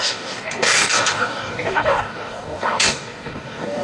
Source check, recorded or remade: remade